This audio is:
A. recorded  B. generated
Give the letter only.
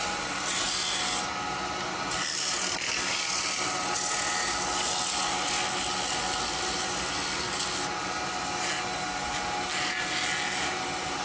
A